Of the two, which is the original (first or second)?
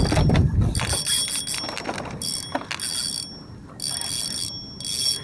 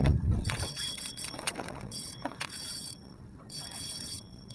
first